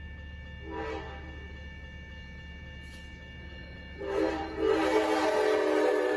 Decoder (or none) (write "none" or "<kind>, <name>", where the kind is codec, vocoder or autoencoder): none